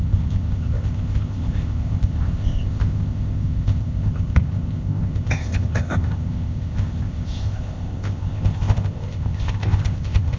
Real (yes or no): no